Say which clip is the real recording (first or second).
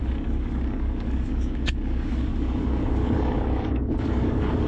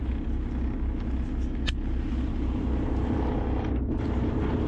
second